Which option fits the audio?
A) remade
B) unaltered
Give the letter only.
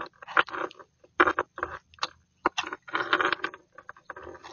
B